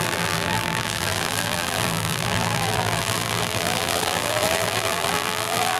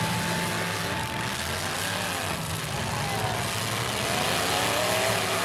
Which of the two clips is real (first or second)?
second